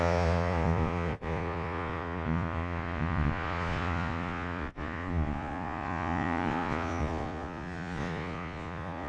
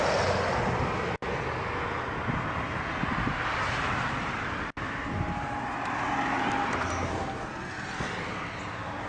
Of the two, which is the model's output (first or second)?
first